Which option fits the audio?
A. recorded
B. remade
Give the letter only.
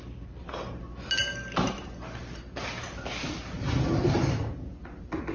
A